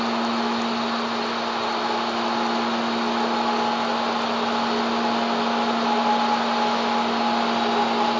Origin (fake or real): real